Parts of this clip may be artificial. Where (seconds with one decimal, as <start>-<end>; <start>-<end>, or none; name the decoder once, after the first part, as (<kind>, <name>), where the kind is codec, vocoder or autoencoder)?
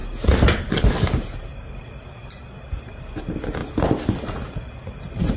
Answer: none